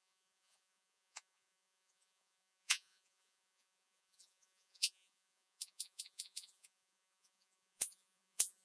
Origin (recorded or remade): remade